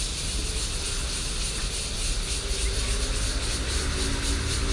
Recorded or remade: recorded